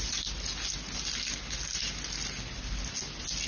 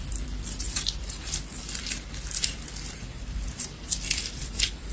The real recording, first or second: first